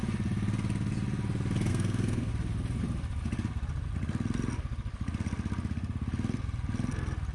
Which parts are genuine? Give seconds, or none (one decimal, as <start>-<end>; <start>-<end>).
0.0-1.7; 2.3-7.3